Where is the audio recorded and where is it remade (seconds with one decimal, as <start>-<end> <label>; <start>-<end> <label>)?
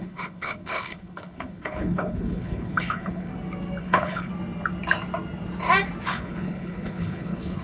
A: 0.0-3.3 remade; 3.3-3.8 recorded; 3.8-4.3 remade; 4.3-6.1 recorded; 6.1-7.6 remade